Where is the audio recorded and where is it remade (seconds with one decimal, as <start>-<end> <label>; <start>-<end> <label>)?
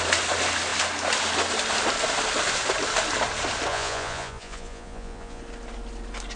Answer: 0.0-3.7 recorded; 3.7-5.4 remade; 5.4-6.4 recorded